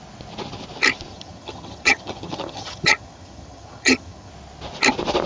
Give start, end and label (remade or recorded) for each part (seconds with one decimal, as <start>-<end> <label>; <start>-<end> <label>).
0.0-1.1 recorded; 1.1-4.3 remade; 4.3-5.3 recorded